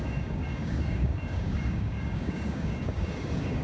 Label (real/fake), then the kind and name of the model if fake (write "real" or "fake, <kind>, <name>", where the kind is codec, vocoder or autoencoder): fake, codec, DAC